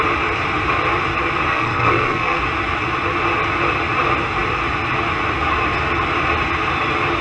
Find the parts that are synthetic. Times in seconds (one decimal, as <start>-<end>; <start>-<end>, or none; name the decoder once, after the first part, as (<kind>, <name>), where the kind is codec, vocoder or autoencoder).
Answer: 1.5-2.4 (codec, SNAC)